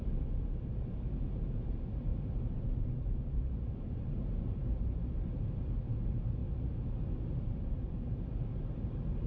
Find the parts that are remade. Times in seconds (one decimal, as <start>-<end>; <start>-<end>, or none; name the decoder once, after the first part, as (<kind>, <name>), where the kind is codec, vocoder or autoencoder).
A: 0.0-6.4 (vocoder, BigVGAN v2); 7.4-9.3